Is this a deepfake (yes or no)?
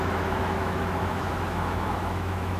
yes